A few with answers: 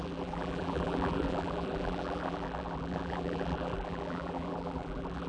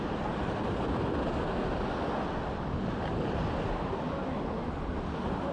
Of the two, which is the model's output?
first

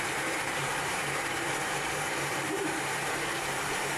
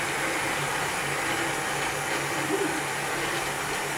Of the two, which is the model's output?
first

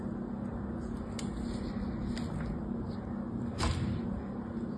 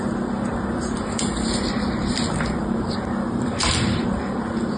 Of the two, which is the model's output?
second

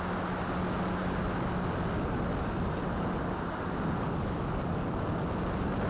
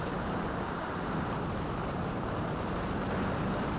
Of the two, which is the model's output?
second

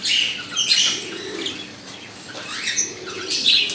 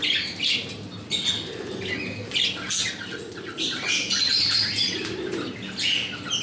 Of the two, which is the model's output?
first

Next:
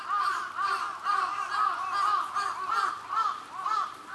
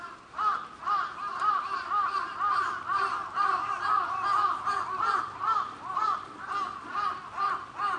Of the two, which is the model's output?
second